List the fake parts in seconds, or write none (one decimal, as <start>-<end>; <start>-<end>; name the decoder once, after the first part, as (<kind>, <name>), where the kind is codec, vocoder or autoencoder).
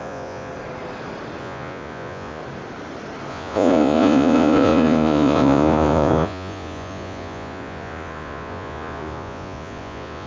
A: 0.0-0.5 (vocoder, Vocos); 1.4-2.4; 3.3-10.3